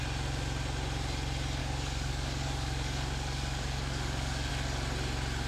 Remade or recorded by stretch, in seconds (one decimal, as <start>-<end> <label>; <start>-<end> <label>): 0.0-1.6 recorded; 1.6-4.5 remade; 4.5-5.5 recorded